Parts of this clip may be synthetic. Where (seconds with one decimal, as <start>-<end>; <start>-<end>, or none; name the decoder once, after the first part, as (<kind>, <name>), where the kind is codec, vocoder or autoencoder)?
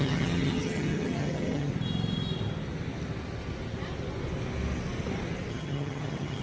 0.0-1.7 (vocoder, HiFi-GAN); 5.5-6.4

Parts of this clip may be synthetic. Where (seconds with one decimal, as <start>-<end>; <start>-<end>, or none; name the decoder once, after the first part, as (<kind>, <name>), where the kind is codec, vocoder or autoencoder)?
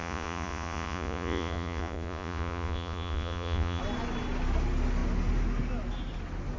0.0-3.8 (vocoder, Vocos)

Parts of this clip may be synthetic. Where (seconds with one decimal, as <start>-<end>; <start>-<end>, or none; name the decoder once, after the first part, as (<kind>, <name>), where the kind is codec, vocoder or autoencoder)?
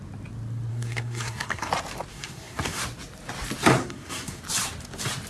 0.7-1.7 (codec, SNAC); 2.1-2.8; 3.8-4.4